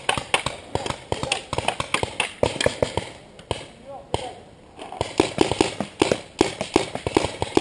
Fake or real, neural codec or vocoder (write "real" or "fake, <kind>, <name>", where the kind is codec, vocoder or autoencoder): real